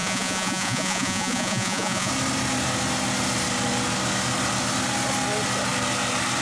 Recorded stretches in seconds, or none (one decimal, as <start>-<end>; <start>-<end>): 2.1-6.4